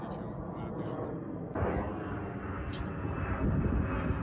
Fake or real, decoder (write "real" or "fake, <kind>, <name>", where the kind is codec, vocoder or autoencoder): real